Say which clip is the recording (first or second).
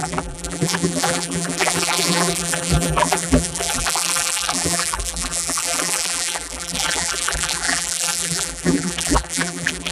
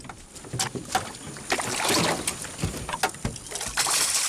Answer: second